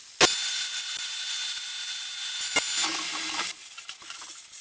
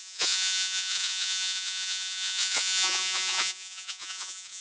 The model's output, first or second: second